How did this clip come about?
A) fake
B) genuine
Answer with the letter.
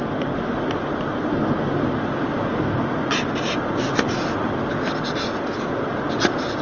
B